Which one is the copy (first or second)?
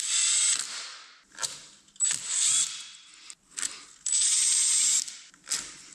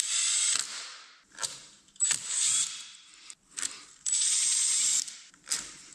second